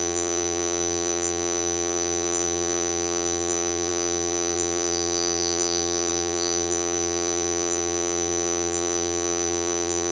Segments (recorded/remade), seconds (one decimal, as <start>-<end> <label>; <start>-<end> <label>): 0.0-10.1 remade

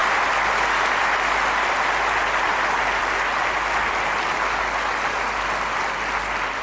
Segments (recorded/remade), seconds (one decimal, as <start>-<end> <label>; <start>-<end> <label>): 0.0-6.6 recorded

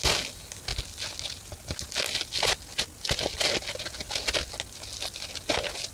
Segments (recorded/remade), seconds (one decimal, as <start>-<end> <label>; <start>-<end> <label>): 0.0-5.9 recorded

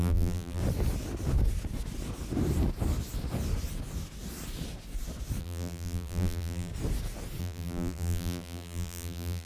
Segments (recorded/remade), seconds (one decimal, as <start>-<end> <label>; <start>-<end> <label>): 0.0-0.6 remade; 0.6-5.4 recorded; 5.4-6.7 remade; 6.7-7.4 recorded; 7.4-9.5 remade

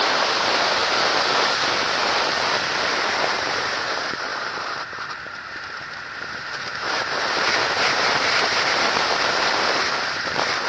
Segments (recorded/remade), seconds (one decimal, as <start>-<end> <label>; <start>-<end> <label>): 0.0-0.8 remade; 0.8-3.2 recorded; 3.2-10.7 remade